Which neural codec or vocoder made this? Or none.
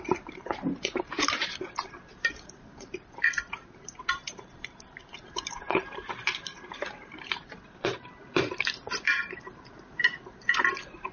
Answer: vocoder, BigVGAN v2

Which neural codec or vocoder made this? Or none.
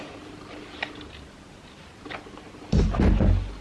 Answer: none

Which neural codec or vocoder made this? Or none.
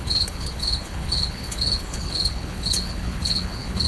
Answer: codec, HILCodec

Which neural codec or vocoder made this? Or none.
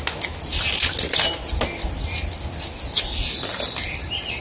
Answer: none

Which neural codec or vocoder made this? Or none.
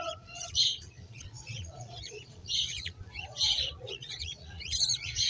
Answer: vocoder, Vocos